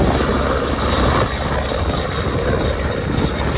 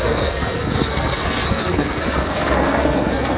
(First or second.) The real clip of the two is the first